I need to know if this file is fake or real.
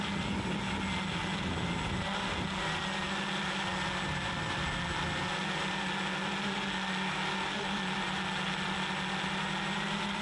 real